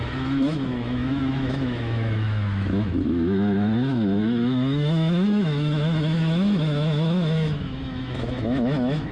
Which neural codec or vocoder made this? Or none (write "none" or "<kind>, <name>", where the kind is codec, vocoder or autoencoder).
autoencoder, DAC-VAE